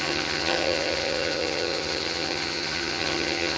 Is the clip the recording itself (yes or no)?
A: no